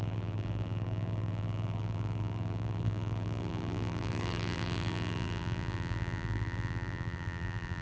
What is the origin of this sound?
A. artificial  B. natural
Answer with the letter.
A